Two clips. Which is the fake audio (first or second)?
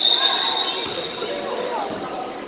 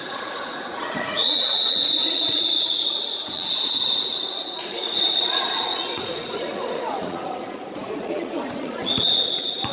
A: second